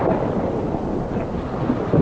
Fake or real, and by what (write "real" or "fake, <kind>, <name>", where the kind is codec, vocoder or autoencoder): real